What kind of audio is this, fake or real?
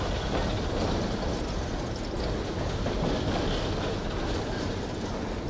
real